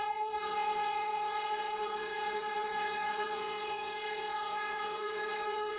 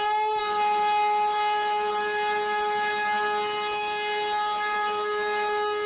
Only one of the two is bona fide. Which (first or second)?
second